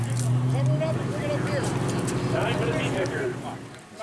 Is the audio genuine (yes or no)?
yes